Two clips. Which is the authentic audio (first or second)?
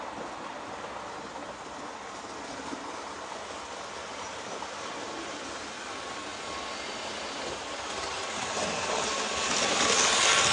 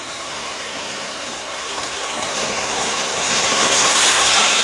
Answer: first